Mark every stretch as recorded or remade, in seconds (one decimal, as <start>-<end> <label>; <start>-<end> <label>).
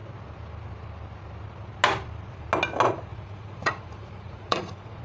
0.0-3.1 recorded; 3.1-5.0 remade